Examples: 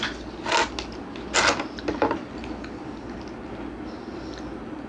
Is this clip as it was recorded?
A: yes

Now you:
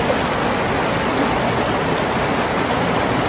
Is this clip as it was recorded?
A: yes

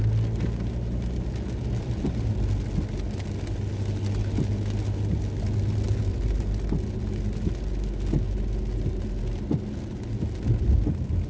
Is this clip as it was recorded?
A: yes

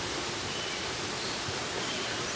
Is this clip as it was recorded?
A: yes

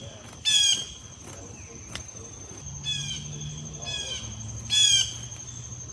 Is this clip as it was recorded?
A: yes